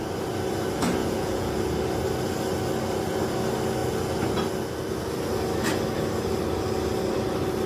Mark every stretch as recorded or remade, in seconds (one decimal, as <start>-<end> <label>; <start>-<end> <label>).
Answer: 0.0-1.0 recorded; 1.0-1.6 remade; 1.6-7.7 recorded